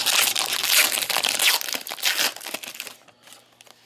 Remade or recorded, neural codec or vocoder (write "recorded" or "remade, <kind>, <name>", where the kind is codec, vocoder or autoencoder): recorded